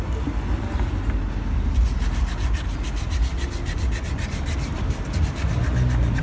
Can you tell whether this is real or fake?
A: real